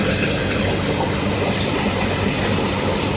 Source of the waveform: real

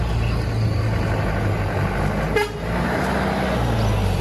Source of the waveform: real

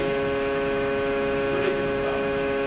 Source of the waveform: fake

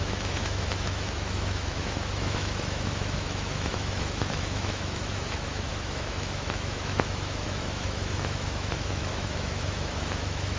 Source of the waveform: fake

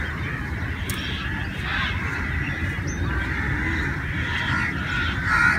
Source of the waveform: real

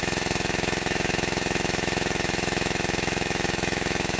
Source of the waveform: fake